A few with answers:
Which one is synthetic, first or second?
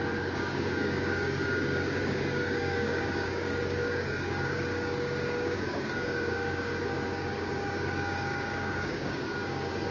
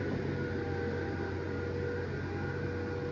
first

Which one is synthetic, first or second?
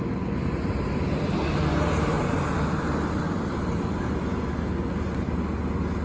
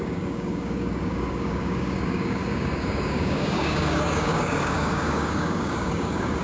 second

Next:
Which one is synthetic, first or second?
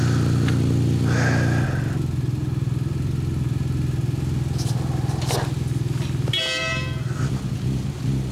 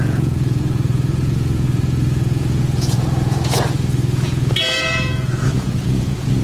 second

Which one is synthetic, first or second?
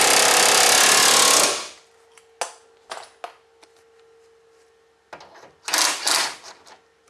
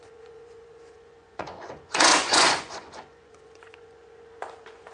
second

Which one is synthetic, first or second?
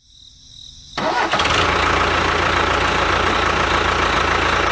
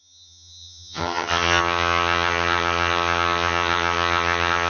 second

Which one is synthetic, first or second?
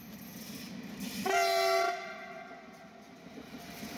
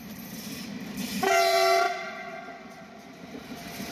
second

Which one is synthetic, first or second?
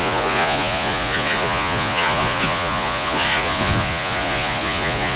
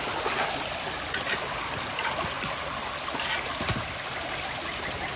first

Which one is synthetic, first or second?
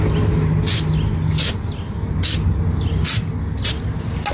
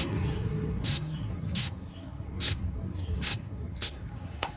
second